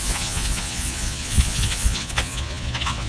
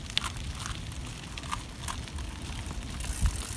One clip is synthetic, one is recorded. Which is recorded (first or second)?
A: second